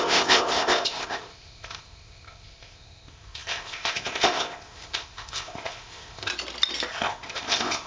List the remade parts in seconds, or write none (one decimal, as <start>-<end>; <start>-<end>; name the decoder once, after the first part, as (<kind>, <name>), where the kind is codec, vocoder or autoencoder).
0.0-6.3 (codec, ZipCodec); 6.9-7.9